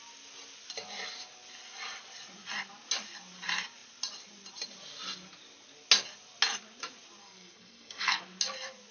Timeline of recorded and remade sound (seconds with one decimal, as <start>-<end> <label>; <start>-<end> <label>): 0.0-7.2 recorded; 7.2-8.2 remade; 8.2-8.9 recorded